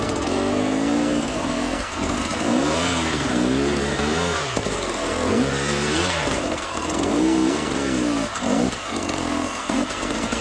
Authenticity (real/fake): fake